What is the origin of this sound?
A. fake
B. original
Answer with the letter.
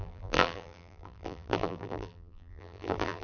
A